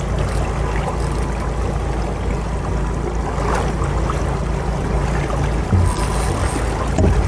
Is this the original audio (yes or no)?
yes